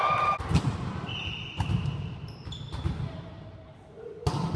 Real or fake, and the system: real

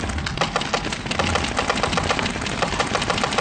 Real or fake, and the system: real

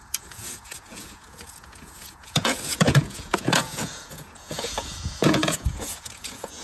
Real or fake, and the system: fake, vocoder, Vocos